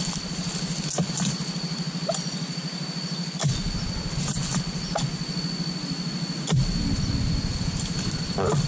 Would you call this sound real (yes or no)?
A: yes